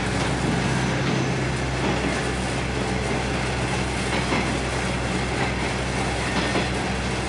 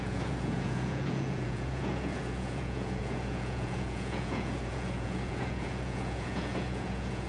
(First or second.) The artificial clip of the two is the second